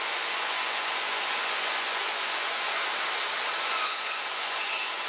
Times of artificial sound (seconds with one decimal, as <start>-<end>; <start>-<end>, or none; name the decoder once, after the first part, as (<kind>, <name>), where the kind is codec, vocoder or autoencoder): 0.0-2.9 (vocoder, Vocos); 3.6-5.1